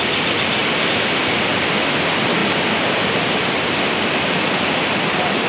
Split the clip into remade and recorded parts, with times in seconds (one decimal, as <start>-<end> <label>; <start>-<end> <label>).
0.0-5.5 recorded